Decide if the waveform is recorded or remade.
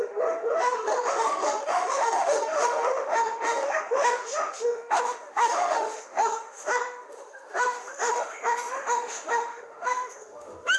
remade